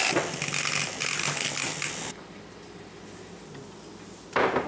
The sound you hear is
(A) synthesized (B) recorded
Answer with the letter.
B